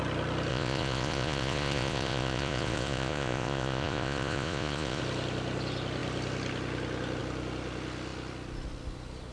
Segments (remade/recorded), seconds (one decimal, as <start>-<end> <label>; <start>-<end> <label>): 0.0-0.5 recorded; 0.5-5.0 remade; 5.0-9.3 recorded